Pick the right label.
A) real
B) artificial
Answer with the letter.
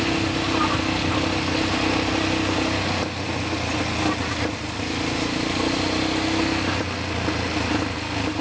A